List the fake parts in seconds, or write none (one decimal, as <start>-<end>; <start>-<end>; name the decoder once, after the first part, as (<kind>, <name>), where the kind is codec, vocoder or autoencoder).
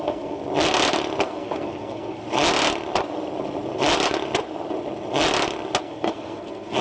0.0-0.4 (codec, SNAC); 1.2-2.2; 5.8-6.8